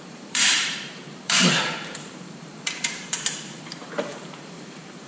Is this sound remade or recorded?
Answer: remade